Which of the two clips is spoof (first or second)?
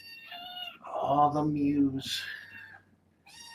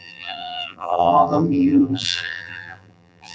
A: second